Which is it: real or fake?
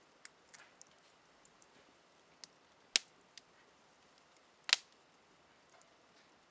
real